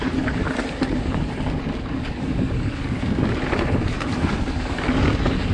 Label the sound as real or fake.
fake